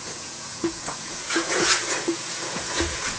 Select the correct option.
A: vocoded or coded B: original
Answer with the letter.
A